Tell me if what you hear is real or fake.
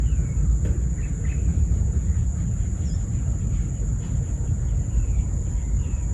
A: real